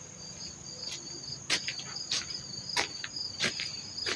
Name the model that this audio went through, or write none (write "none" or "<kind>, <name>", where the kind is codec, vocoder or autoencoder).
none